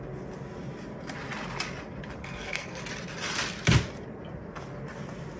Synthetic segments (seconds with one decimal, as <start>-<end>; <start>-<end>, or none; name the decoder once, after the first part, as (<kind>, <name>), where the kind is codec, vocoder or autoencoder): 2.2-2.8 (codec, SNAC)